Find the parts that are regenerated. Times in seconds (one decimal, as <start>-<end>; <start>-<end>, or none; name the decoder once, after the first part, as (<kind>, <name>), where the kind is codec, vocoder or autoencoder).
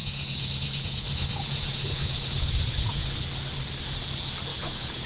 0.0-3.1 (vocoder, Vocos); 4.5-5.1